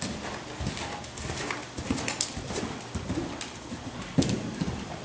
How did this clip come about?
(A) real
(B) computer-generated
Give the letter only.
A